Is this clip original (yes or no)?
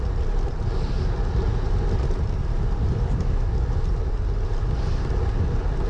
yes